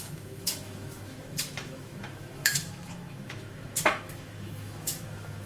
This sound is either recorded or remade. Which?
remade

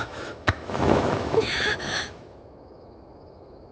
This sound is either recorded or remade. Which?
remade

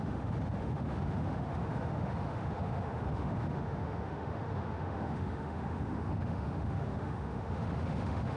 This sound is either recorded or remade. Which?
remade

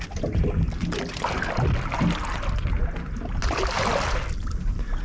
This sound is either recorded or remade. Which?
recorded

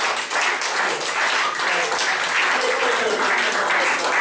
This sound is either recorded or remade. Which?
recorded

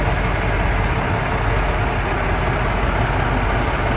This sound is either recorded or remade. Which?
recorded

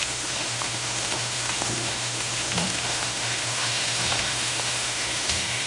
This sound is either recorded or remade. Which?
remade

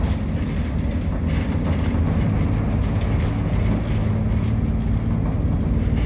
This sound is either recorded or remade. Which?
recorded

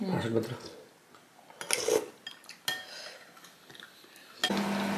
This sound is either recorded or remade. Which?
recorded